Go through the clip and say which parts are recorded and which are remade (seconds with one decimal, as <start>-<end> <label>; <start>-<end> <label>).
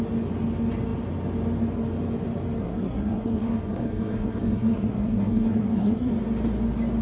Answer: 0.0-2.6 recorded; 2.6-6.1 remade; 6.1-7.0 recorded